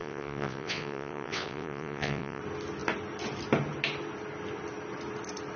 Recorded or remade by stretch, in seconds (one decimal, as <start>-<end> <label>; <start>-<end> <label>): 0.0-2.4 remade; 2.4-5.6 recorded